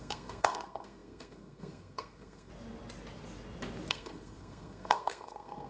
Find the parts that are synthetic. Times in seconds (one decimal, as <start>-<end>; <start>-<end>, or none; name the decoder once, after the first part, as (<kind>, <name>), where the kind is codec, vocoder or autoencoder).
0.0-2.5 (codec, SNAC); 3.9-5.7